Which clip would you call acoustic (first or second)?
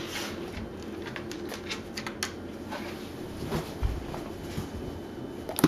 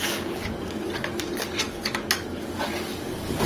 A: first